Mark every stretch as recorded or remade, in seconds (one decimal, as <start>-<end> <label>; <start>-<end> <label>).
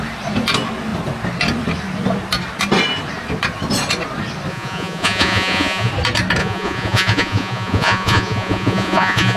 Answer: 0.0-4.5 recorded; 4.5-5.9 remade; 5.9-6.4 recorded; 6.4-9.4 remade